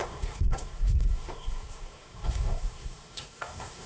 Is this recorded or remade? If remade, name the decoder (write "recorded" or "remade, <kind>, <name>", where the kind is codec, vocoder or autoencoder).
remade, codec, SNAC